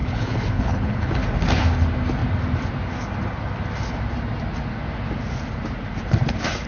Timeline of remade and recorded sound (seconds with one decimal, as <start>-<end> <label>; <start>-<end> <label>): 0.0-1.2 remade; 1.2-6.7 recorded